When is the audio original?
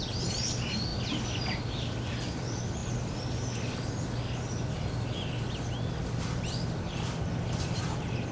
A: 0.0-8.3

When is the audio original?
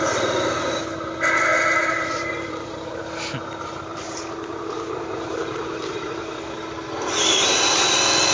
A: 0.0-1.5; 3.0-3.9; 6.4-8.3